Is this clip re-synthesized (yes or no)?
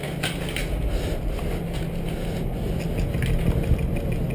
no